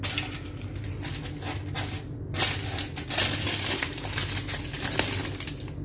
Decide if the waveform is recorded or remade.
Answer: recorded